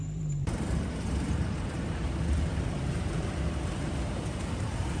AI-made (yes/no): yes